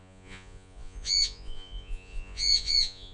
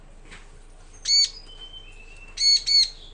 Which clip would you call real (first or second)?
second